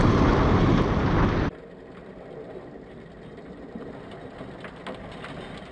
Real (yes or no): yes